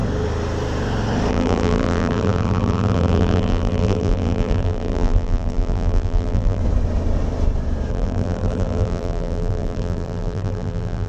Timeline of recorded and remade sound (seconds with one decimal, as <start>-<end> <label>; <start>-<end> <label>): 0.0-1.3 recorded; 1.3-6.6 remade; 6.6-7.9 recorded; 7.9-11.1 remade

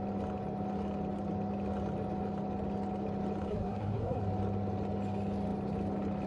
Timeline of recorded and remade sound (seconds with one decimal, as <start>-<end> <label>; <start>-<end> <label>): 0.0-3.5 recorded; 3.5-4.2 remade; 4.2-6.3 recorded

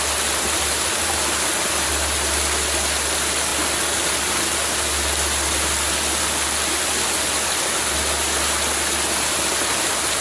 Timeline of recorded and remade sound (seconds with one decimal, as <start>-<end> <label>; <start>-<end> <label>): 0.0-10.2 recorded

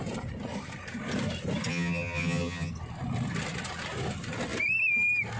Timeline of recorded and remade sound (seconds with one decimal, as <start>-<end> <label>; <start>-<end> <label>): 0.0-1.7 recorded; 1.7-2.7 remade; 2.7-5.4 recorded